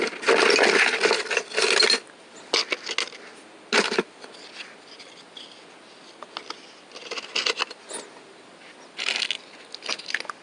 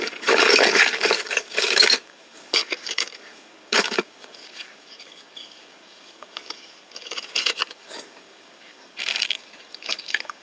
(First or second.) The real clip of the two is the first